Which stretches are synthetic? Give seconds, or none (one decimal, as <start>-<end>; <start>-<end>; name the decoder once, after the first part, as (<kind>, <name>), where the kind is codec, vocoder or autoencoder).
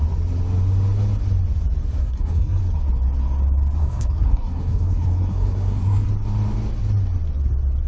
2.0-2.6 (codec, SNAC); 3.8-6.1